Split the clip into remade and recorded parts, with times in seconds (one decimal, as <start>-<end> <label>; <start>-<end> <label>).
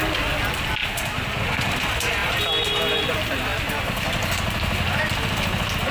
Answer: 0.0-5.9 recorded